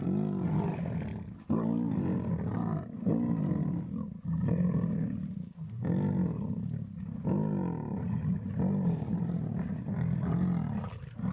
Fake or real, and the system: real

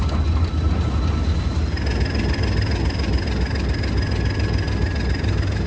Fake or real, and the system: real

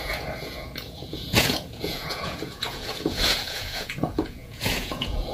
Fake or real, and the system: fake, vocoder, Vocos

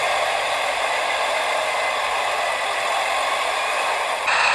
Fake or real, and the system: real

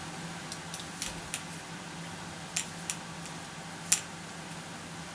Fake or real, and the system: real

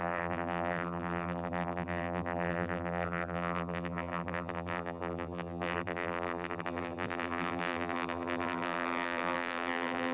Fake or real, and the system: fake, vocoder, BigVGAN v2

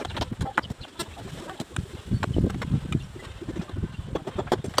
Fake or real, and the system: real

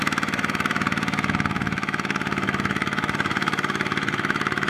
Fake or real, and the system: fake, autoencoder, DAC-VAE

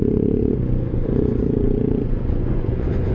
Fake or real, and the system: fake, vocoder, Vocos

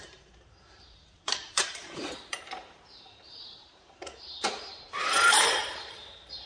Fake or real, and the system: fake, vocoder, BigVGAN v2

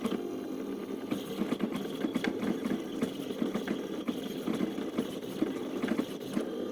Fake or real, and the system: real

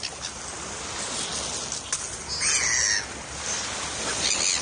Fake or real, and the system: real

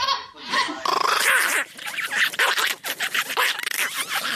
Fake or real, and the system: real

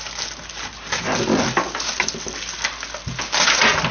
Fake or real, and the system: real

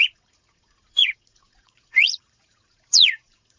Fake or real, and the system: fake, vocoder, Vocos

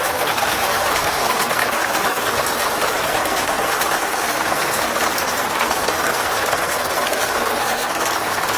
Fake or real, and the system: fake, codec, SNAC